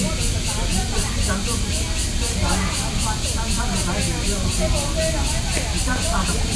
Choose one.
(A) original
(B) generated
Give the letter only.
A